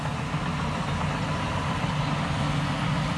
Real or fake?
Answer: real